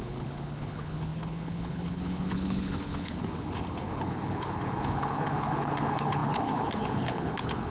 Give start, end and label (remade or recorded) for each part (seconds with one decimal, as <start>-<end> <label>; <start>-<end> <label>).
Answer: 0.0-7.7 remade